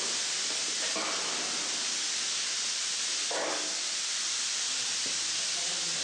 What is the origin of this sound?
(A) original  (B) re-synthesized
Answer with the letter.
A